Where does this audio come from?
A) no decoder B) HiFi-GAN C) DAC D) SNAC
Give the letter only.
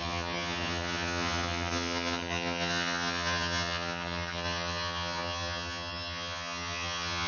B